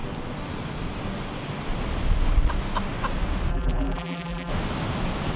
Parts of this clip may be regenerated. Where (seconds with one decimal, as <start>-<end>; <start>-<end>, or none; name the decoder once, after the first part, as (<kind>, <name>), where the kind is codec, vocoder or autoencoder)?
3.5-4.5 (vocoder, BigVGAN v2)